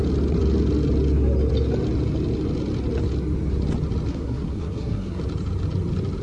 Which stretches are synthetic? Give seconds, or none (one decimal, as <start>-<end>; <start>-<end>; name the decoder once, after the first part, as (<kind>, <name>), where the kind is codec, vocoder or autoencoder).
4.1-5.2 (codec, SNAC)